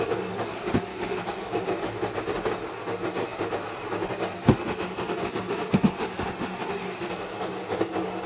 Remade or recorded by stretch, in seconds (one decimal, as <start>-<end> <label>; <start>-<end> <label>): 0.0-0.9 recorded; 0.9-1.8 remade; 1.8-8.3 recorded